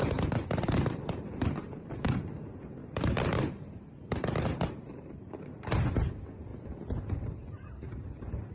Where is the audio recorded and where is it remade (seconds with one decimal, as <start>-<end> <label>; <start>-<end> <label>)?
0.0-8.5 remade

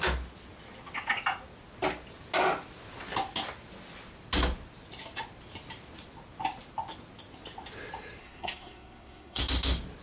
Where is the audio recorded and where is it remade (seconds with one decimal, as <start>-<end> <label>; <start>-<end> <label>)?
0.0-8.2 recorded; 8.2-9.4 remade; 9.4-10.0 recorded